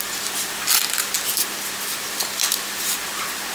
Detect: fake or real fake